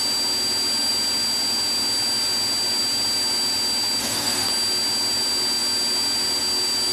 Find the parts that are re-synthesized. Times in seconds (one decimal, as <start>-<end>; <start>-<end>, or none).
4.0-4.5